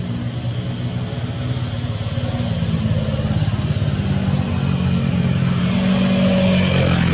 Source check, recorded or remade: recorded